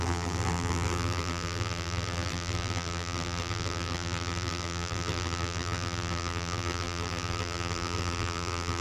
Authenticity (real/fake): fake